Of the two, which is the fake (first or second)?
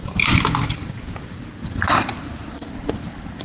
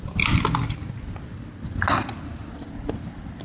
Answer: first